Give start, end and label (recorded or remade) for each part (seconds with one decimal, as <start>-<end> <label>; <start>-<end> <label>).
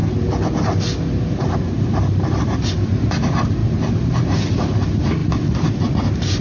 0.0-6.4 recorded